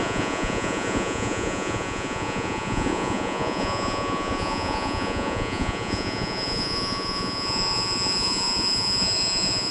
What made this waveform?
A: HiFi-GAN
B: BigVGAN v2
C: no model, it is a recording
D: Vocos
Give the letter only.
D